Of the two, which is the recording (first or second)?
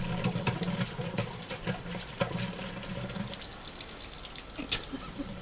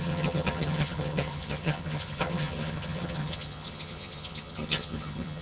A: first